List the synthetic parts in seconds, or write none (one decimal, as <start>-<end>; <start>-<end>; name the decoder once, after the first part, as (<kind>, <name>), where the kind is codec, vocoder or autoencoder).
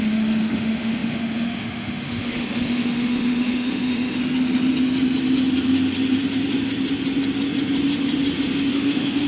0.0-4.2 (autoencoder, DAC-VAE); 8.7-9.3